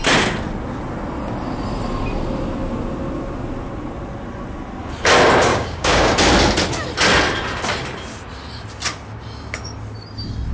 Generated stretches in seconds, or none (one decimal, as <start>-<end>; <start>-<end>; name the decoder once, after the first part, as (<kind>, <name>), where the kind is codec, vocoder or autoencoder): 5.5-6.1 (codec, DAC)